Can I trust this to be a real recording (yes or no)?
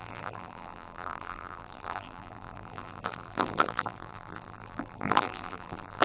no